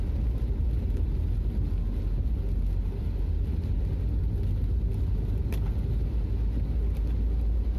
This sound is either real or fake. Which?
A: real